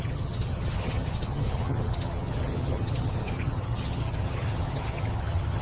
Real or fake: fake